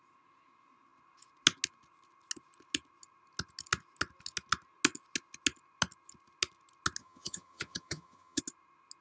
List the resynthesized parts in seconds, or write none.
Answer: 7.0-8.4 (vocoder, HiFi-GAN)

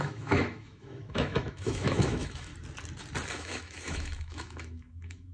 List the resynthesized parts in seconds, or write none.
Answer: 0.0-2.5 (autoencoder, DAC-VAE); 3.3-5.3

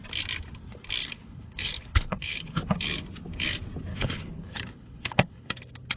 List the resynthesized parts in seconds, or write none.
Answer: 1.0-2.6 (codec, HILCodec); 3.9-5.5